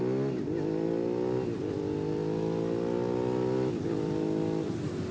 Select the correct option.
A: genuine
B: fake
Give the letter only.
A